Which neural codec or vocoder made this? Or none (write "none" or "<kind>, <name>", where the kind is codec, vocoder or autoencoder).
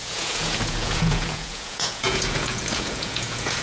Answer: vocoder, Vocos